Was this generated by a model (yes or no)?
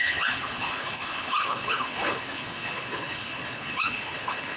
yes